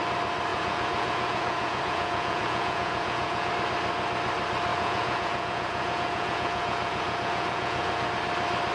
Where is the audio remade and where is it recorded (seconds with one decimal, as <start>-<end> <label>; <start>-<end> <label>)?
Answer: 0.0-0.5 recorded; 0.5-3.5 remade; 3.5-4.7 recorded; 4.7-8.1 remade; 8.1-8.7 recorded